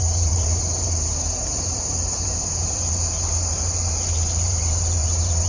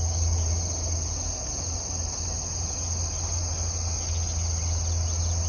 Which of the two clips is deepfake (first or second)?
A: first